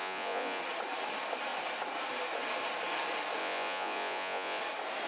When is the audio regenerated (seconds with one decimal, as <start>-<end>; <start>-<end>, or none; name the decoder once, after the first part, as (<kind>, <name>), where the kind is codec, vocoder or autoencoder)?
0.0-0.6 (vocoder, Vocos); 3.4-4.6